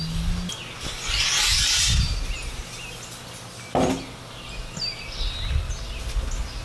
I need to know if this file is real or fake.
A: real